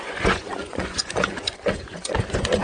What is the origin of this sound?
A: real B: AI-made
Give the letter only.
B